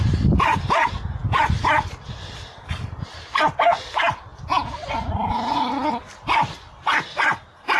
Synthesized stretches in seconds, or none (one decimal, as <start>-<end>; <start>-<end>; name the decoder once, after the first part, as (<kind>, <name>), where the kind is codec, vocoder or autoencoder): none